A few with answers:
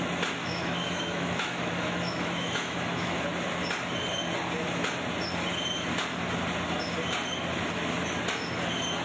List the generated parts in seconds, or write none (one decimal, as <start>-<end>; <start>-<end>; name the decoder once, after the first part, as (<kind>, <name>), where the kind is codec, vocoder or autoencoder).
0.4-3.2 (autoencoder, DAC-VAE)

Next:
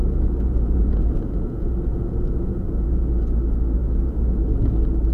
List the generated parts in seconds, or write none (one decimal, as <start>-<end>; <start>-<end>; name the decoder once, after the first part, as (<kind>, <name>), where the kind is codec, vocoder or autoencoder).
0.0-3.1 (vocoder, Vocos); 3.8-4.4

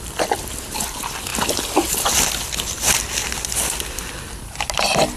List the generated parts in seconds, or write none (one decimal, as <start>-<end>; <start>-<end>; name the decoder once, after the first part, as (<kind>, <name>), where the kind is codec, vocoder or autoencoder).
none

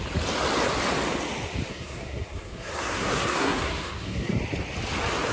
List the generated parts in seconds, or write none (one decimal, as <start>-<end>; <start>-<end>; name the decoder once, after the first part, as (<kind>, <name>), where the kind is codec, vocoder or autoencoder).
1.7-4.4 (codec, SNAC)